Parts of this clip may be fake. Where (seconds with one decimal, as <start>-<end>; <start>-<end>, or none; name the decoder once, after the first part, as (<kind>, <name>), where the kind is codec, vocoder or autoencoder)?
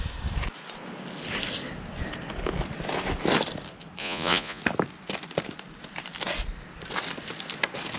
4.0-4.6 (vocoder, Vocos)